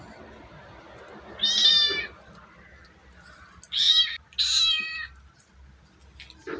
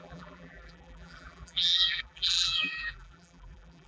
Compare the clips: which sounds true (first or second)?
first